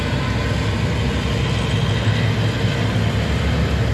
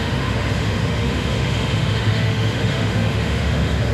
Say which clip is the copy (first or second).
second